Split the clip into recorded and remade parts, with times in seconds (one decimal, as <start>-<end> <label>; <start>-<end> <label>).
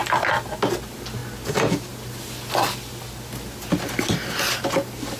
0.0-5.2 recorded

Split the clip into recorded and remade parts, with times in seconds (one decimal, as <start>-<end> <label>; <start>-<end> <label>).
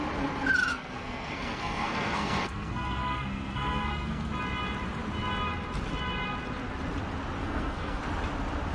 0.0-0.7 recorded; 0.7-4.3 remade; 4.3-7.4 recorded; 7.4-8.0 remade; 8.0-8.7 recorded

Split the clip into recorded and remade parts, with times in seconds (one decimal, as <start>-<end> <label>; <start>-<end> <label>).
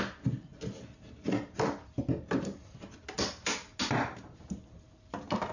0.0-5.5 recorded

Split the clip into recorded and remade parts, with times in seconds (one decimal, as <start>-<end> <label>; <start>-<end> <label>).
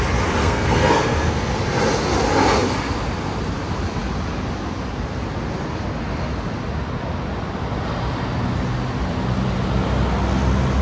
0.0-0.4 recorded; 0.4-1.5 remade; 1.5-10.8 recorded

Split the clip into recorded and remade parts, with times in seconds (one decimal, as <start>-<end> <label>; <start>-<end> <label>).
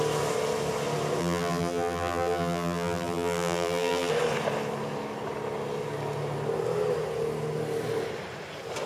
0.0-1.2 recorded; 1.2-4.1 remade; 4.1-8.9 recorded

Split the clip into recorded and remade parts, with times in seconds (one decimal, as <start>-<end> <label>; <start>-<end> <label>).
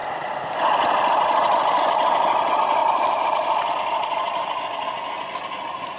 0.0-6.0 recorded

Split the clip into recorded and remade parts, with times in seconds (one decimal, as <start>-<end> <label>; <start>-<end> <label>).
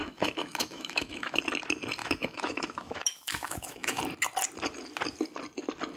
0.0-1.4 remade; 1.4-2.0 recorded; 2.0-4.0 remade; 4.0-6.0 recorded